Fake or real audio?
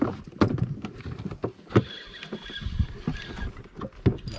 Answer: real